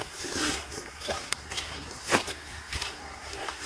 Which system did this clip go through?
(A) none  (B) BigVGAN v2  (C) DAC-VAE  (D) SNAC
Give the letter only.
D